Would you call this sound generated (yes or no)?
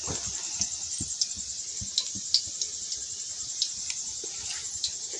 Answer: no